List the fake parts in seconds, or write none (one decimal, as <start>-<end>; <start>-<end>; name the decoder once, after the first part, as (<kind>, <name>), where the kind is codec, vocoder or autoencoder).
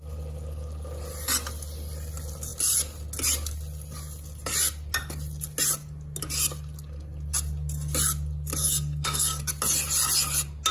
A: 8.6-9.4 (codec, SNAC)